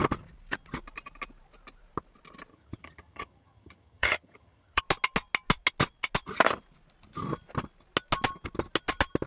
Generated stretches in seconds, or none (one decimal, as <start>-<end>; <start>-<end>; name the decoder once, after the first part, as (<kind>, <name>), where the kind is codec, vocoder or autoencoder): 2.5-4.8 (vocoder, HiFi-GAN)